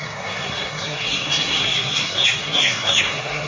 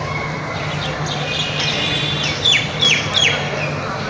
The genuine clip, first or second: second